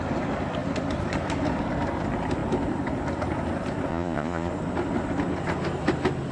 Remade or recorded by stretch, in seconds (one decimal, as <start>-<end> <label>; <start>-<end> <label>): 0.0-3.9 recorded; 3.9-4.5 remade; 4.5-6.3 recorded